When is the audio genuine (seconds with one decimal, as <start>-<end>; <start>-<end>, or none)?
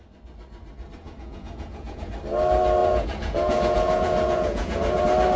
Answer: 0.0-1.0; 2.1-2.8; 5.0-5.4